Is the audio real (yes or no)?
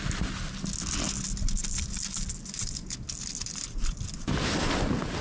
yes